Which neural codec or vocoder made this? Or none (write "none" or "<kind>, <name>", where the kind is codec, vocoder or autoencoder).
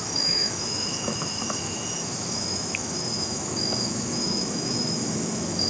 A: autoencoder, DAC-VAE